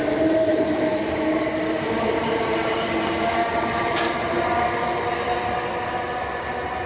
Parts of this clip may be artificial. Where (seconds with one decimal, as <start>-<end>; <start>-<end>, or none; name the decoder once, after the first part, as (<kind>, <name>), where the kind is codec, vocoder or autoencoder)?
0.5-4.6 (vocoder, BigVGAN v2)